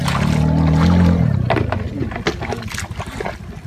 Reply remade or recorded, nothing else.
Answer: recorded